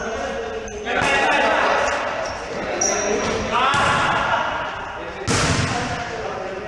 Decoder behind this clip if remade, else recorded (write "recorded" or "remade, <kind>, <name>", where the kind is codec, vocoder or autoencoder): recorded